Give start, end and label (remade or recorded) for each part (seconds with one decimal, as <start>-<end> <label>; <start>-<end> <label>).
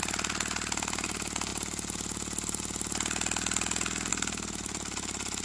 0.0-5.4 recorded